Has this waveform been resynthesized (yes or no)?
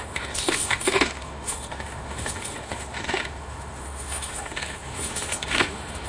yes